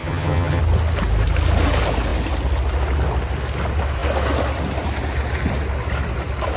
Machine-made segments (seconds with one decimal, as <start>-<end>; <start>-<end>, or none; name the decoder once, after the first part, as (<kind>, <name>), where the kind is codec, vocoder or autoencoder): 0.0-0.6 (vocoder, HiFi-GAN)